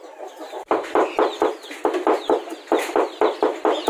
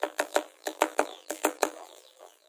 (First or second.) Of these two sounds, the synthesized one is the second